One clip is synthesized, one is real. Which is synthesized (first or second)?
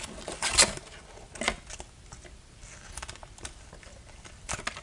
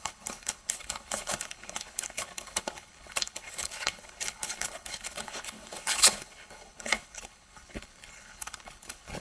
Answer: second